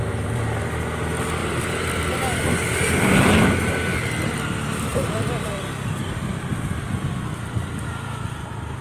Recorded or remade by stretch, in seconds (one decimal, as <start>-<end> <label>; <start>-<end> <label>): 0.0-1.4 recorded; 1.4-2.4 remade; 2.4-8.8 recorded